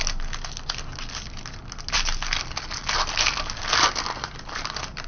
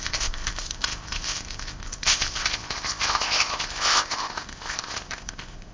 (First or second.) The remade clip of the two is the second